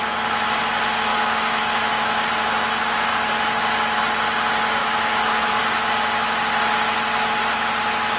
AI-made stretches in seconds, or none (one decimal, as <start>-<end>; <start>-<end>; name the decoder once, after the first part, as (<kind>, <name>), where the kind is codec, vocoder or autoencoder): 1.1-2.3 (autoencoder, DAC-VAE); 4.8-5.6